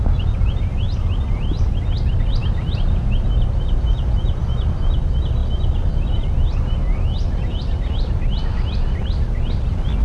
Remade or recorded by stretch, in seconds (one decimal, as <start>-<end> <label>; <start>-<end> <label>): 0.0-10.0 recorded

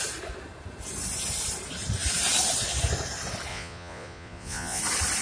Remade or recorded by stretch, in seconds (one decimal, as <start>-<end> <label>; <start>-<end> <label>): 0.0-3.5 recorded; 3.5-4.8 remade; 4.8-5.2 recorded

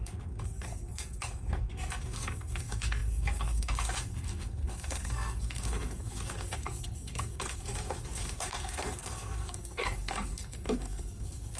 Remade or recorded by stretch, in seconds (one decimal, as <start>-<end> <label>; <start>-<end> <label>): 0.0-11.6 remade

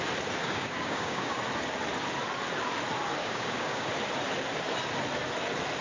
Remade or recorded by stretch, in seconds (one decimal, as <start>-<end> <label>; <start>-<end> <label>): 0.0-0.4 recorded; 0.4-1.4 remade; 1.4-3.2 recorded; 3.2-3.9 remade; 3.9-5.8 recorded